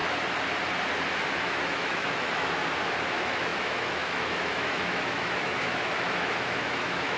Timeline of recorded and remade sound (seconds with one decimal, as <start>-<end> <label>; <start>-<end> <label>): 0.0-1.3 recorded; 1.3-2.6 remade; 2.6-3.1 recorded; 3.1-7.2 remade